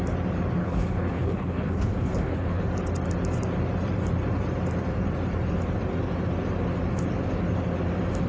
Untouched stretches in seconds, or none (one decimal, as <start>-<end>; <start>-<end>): 0.0-0.6; 2.6-8.3